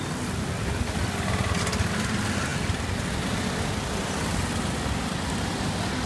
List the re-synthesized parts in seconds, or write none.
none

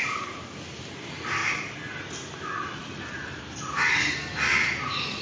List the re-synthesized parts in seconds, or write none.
none

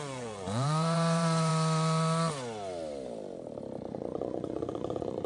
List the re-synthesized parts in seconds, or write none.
0.0-1.5; 3.9-5.3

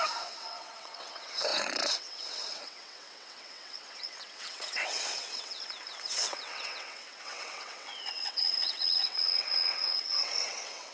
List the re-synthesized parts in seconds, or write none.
0.0-10.9

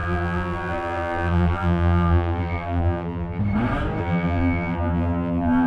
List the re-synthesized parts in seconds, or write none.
0.0-3.4; 4.0-5.7

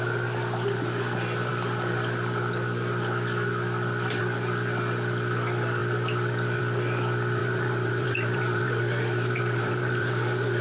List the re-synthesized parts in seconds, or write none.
7.4-10.6

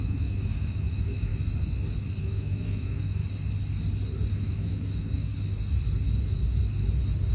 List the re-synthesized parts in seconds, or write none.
0.0-1.3; 2.2-3.2; 4.4-5.3

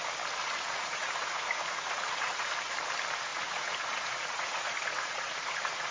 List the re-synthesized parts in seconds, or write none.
0.4-2.5; 3.3-5.9